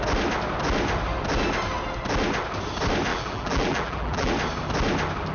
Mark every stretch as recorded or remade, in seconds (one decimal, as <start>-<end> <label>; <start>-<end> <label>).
0.0-3.1 recorded; 3.1-4.3 remade; 4.3-5.3 recorded